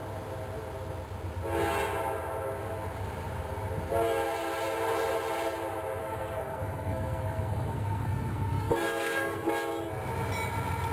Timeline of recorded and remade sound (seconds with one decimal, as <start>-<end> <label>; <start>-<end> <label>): 0.0-6.0 recorded; 6.0-9.5 remade; 9.5-10.9 recorded

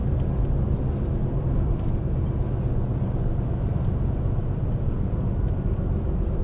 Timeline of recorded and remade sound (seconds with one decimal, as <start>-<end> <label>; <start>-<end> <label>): 0.0-6.4 recorded

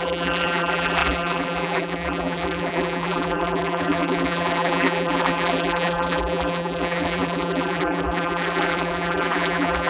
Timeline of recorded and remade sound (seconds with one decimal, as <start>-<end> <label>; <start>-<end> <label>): 0.0-9.9 remade